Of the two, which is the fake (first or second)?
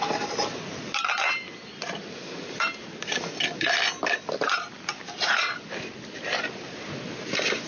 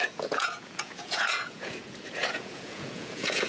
second